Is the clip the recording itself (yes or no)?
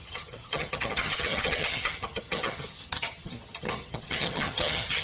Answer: no